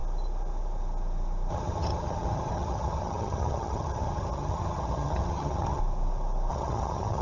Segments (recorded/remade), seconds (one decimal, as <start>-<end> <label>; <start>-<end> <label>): 0.0-1.5 recorded; 1.5-5.8 remade; 5.8-6.5 recorded; 6.5-7.2 remade